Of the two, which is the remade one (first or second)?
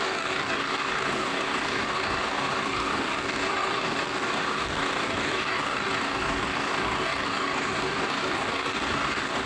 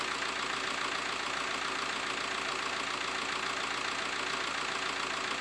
first